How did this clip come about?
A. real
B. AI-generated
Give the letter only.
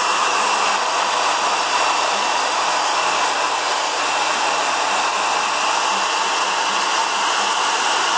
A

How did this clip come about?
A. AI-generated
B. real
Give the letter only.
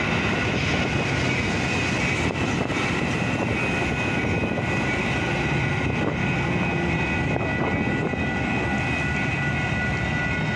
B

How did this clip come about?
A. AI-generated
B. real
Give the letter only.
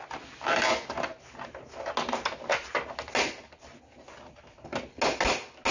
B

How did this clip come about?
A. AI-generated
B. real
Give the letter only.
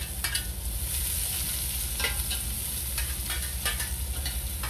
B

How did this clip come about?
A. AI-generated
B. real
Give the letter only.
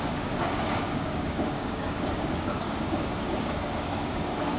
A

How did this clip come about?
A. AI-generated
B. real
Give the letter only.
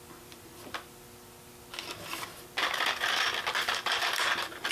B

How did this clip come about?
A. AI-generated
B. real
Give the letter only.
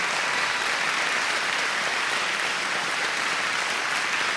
B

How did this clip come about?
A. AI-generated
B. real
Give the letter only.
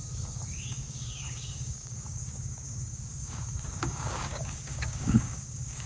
A